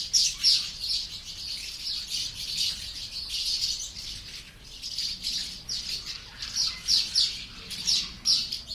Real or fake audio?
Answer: real